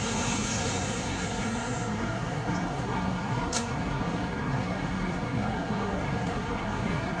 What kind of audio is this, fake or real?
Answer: fake